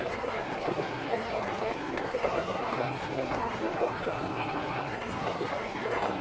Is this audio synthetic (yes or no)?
yes